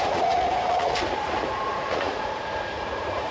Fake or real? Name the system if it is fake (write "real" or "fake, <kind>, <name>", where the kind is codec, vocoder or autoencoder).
fake, vocoder, Vocos